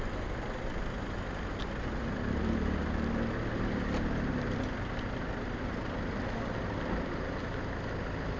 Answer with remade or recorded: recorded